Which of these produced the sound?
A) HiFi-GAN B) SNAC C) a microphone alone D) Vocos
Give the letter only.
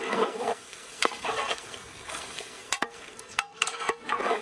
B